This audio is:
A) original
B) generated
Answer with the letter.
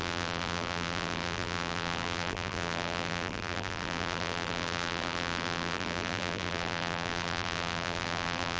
B